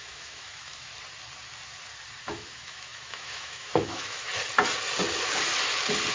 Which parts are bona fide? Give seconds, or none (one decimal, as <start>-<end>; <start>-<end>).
0.9-2.2; 4.3-6.1